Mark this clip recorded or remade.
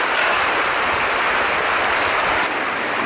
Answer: recorded